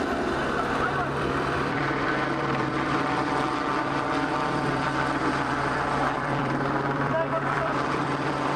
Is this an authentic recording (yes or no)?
no